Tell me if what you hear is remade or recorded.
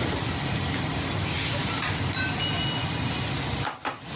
recorded